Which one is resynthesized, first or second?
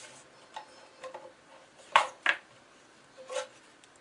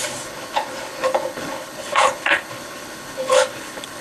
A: second